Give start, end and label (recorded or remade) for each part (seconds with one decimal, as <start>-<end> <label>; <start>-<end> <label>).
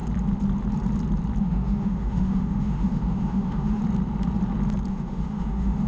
0.0-1.4 recorded; 1.4-3.8 remade; 3.8-4.9 recorded; 4.9-5.9 remade